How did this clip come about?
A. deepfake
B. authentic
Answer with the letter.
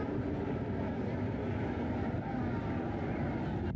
B